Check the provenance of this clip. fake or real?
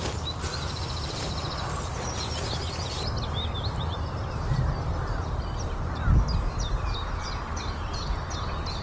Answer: real